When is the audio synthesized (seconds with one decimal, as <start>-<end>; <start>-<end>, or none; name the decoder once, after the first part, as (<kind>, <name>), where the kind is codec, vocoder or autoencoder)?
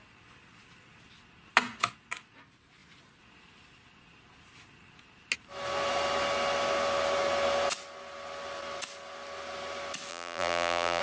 10.1-11.0 (vocoder, BigVGAN v2)